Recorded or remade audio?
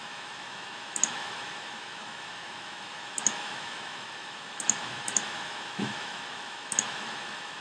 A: remade